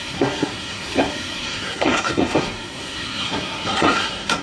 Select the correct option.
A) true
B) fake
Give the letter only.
B